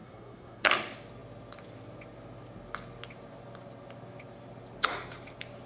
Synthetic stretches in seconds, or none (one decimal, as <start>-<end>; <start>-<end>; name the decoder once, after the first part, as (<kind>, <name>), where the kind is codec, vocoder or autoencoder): 0.0-0.7 (codec, SNAC)